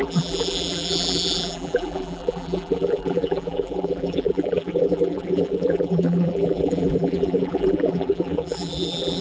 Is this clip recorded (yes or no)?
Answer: no